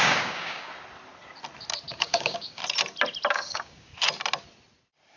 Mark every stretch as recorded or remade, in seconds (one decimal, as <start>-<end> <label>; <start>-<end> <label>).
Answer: 0.0-0.7 remade; 0.7-1.9 recorded; 1.9-2.6 remade; 2.6-3.3 recorded; 3.3-3.9 remade; 3.9-5.2 recorded